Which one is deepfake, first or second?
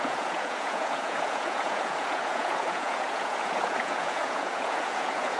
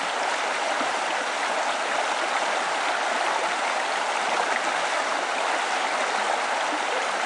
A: first